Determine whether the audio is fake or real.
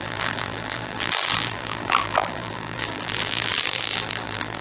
fake